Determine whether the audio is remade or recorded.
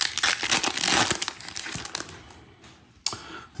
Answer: recorded